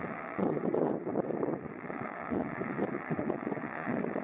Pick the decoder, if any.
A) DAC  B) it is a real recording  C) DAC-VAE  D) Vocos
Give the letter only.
D